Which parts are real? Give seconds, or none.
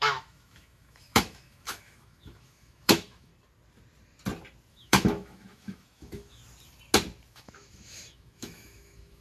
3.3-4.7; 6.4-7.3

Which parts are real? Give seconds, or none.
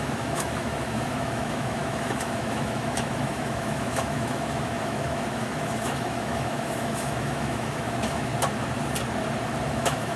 8.3-9.7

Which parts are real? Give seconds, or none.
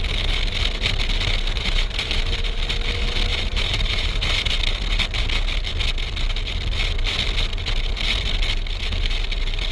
0.0-1.5; 2.6-3.3; 4.5-9.7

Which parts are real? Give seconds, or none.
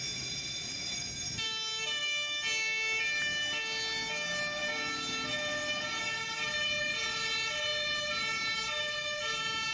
0.0-9.7